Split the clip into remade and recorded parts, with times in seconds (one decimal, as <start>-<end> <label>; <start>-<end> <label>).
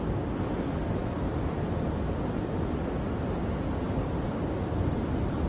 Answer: 0.0-5.5 recorded